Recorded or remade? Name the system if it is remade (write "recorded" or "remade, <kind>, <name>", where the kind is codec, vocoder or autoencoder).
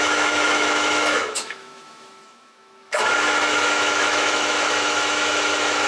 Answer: remade, autoencoder, DAC-VAE